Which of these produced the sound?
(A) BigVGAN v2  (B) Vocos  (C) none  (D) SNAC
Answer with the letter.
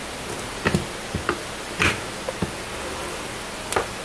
C